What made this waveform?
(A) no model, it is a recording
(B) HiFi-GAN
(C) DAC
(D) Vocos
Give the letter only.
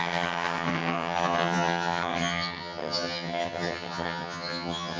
B